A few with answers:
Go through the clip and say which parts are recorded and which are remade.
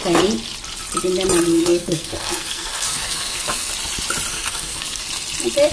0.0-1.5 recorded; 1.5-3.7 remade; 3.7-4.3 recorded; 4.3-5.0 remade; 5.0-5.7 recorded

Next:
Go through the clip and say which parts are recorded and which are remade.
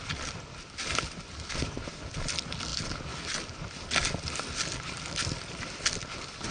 0.0-6.5 recorded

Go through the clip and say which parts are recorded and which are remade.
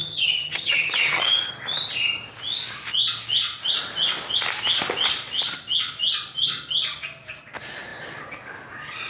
0.0-1.5 remade; 1.5-9.1 recorded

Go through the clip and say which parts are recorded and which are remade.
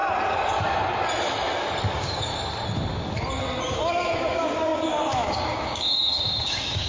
0.0-1.9 recorded; 1.9-2.3 remade; 2.3-3.7 recorded; 3.7-6.9 remade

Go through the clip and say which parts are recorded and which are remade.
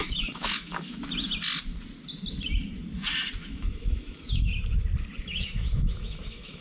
0.0-1.0 remade; 1.0-3.4 recorded; 3.4-4.5 remade; 4.5-5.2 recorded; 5.2-6.6 remade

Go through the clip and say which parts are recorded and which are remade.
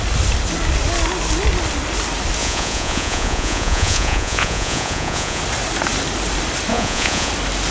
0.0-2.4 recorded; 2.4-5.4 remade; 5.4-6.7 recorded; 6.7-7.3 remade; 7.3-7.7 recorded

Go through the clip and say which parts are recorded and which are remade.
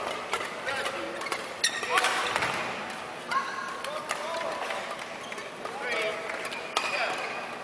0.0-7.6 recorded